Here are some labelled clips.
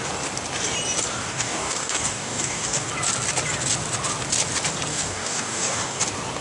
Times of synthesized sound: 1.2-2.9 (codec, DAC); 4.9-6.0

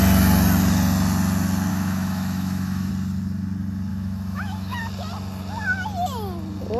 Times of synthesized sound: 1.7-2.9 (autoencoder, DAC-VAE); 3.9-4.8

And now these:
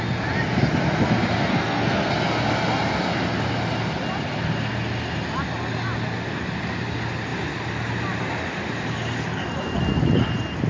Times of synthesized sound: 1.5-2.1 (codec, SNAC)